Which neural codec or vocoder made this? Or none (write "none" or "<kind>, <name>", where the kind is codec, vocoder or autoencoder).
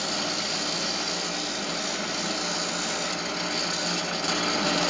none